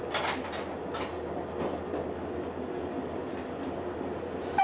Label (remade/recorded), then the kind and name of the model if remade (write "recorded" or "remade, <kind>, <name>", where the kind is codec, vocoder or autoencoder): recorded